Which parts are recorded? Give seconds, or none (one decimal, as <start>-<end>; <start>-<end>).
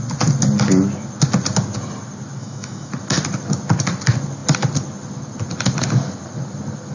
0.0-2.4; 2.9-6.9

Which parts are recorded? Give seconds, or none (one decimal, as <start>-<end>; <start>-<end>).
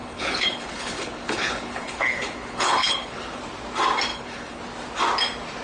3.4-4.1; 4.6-5.6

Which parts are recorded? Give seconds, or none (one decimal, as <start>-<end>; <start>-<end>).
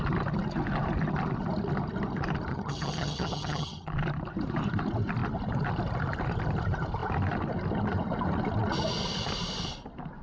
0.0-2.5; 3.9-10.2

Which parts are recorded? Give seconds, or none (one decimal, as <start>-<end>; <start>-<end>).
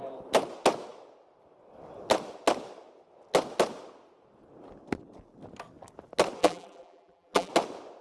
0.0-6.4; 7.5-8.0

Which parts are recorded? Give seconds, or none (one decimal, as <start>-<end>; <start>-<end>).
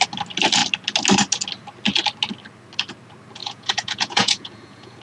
0.0-3.4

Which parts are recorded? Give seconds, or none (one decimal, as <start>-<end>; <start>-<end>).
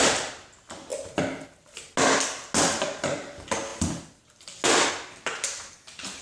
0.0-6.2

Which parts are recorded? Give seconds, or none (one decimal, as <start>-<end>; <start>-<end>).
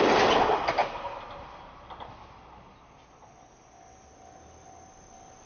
0.0-5.5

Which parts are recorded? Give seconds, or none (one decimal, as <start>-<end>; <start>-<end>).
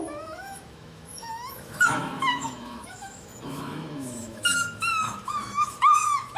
none